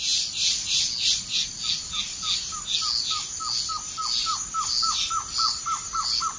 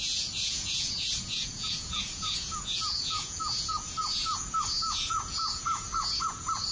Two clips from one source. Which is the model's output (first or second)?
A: second